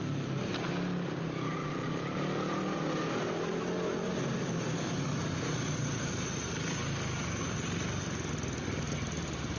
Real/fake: real